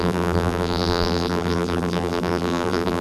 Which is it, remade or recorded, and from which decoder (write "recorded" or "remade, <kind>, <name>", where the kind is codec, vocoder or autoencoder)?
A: remade, vocoder, BigVGAN v2